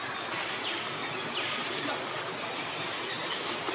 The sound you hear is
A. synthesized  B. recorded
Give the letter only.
B